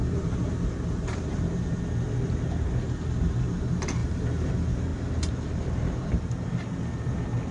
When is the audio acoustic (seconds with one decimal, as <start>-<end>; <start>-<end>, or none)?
1.8-4.0; 4.5-4.9; 6.5-7.5